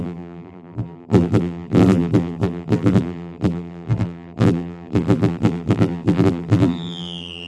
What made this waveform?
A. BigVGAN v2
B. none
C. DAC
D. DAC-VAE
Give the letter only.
A